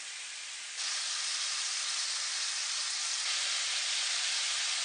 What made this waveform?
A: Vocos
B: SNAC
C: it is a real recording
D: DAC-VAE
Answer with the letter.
C